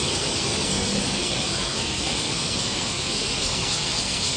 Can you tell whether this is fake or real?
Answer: fake